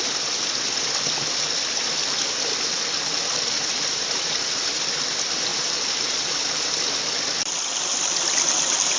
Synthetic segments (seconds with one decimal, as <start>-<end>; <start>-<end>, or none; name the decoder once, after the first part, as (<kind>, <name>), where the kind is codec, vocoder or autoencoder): 5.5-6.7 (vocoder, BigVGAN v2)